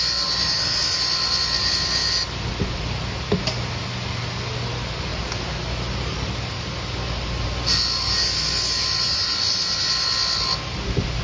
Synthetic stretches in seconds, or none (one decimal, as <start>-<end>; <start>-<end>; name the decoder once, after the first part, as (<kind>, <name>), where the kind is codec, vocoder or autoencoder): none